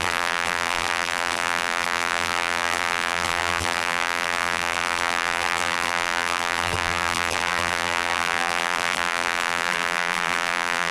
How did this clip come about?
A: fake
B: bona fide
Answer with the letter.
A